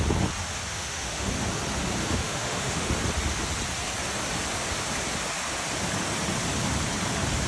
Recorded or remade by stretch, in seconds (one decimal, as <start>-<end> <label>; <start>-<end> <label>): 0.0-0.7 recorded; 0.7-1.3 remade; 1.3-2.0 recorded; 2.0-2.9 remade; 2.9-7.5 recorded